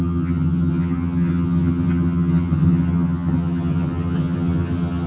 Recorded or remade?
remade